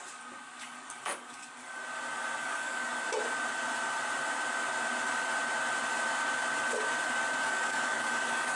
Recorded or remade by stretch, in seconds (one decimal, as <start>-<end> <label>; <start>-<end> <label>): 0.0-1.8 remade; 1.8-2.4 recorded; 2.4-2.9 remade; 2.9-7.4 recorded; 7.4-8.6 remade